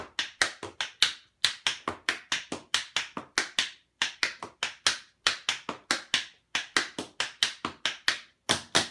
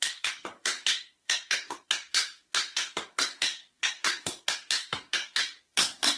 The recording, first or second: first